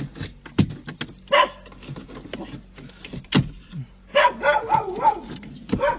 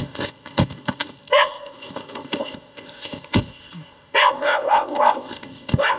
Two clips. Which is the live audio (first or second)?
first